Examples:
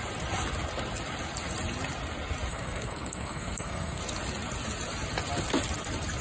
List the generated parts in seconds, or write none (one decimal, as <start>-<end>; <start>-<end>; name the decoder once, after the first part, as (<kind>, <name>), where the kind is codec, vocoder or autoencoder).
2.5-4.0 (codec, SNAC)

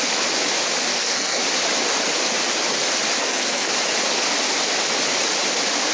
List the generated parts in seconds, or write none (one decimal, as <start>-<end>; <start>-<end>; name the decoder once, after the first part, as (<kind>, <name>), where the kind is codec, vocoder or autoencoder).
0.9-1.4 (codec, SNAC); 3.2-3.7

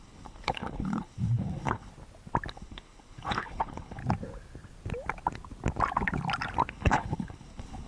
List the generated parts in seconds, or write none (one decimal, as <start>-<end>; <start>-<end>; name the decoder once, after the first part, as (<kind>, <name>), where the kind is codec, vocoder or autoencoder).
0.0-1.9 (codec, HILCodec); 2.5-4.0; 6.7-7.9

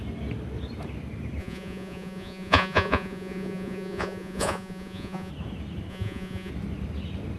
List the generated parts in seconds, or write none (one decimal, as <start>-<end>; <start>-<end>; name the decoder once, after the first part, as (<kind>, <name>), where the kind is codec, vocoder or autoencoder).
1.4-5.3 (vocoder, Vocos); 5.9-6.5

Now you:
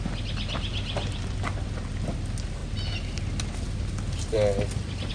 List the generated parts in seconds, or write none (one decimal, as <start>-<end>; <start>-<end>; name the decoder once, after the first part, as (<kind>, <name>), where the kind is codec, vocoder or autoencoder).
none